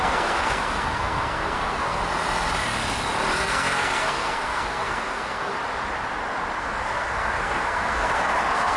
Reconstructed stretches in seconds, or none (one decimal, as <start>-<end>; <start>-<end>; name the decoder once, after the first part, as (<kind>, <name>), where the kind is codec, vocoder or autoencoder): 0.0-2.0 (codec, SNAC); 3.4-5.5; 6.6-8.8